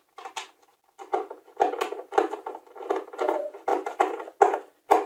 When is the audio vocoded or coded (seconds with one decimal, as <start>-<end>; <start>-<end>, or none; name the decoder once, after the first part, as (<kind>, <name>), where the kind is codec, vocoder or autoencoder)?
none